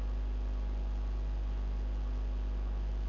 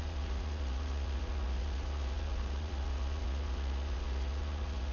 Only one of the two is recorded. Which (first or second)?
first